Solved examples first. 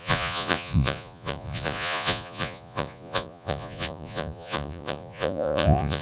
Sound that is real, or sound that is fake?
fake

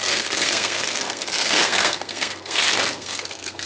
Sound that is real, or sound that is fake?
fake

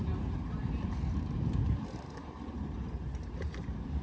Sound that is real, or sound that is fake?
fake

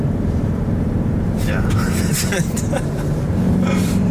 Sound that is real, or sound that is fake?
fake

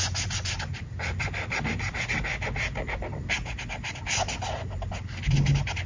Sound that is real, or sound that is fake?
real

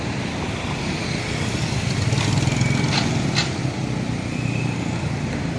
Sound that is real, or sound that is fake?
real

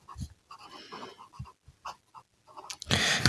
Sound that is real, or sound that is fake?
real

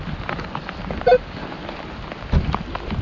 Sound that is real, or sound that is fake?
real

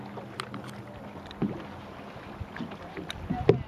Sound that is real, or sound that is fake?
real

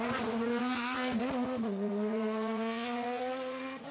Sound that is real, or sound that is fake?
fake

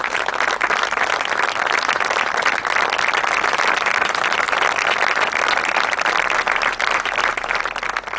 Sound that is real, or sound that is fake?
real